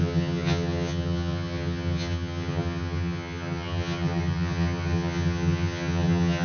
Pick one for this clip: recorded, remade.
remade